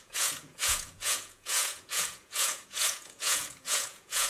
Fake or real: fake